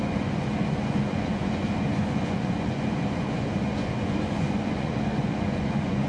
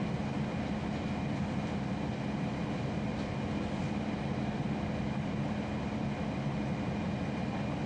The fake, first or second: first